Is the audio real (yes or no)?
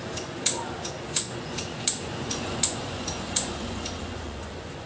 no